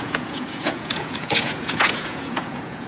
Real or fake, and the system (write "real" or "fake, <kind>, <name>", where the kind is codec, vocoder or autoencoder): fake, vocoder, Vocos